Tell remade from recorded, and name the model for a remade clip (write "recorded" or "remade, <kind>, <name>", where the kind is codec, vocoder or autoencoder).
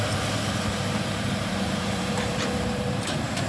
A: remade, vocoder, BigVGAN v2